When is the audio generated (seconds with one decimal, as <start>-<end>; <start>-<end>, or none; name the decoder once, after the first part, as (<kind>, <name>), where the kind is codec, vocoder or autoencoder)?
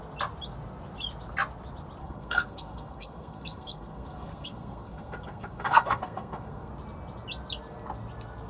2.0-6.7 (codec, SNAC)